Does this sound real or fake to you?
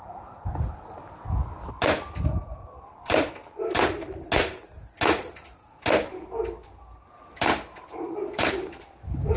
real